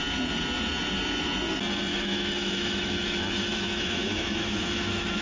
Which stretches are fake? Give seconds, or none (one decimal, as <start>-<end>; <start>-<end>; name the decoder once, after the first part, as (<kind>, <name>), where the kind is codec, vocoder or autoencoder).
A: 1.9-5.2 (autoencoder, DAC-VAE)